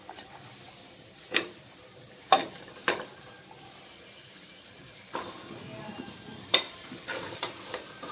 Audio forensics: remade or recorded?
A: remade